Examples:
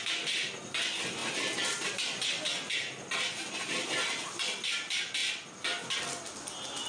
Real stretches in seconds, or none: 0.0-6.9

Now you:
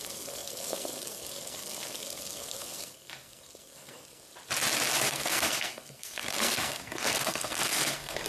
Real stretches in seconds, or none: 4.3-5.1

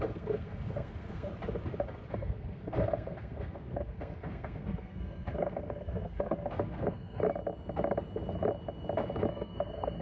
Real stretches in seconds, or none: 1.3-2.1; 7.2-9.3